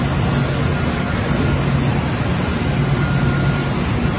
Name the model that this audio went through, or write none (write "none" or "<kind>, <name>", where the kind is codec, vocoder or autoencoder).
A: none